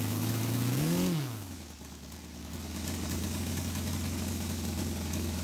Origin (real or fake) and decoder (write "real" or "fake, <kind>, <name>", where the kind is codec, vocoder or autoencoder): fake, codec, DAC